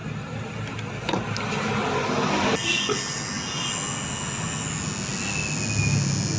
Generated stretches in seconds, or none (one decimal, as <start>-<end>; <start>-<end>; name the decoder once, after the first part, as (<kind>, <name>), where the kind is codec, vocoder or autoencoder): none